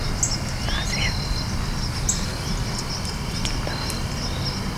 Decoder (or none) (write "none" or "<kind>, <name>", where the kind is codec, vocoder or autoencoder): none